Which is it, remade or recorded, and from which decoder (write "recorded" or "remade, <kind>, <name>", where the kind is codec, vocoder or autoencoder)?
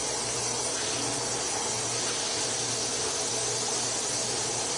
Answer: recorded